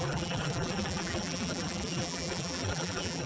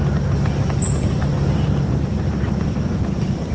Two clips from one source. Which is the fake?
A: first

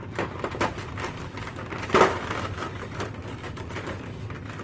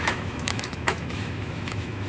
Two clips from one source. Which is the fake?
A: second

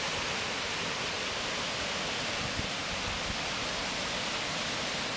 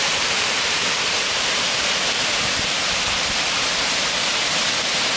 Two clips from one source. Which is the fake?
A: second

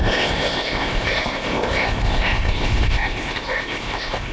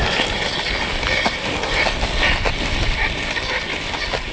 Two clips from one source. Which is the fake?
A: first